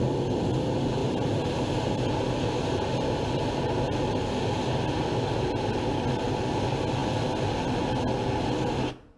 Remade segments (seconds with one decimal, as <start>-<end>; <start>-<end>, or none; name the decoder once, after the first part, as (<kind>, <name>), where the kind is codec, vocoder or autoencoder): none